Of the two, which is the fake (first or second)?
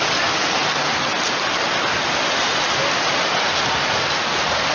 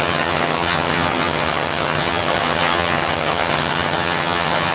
second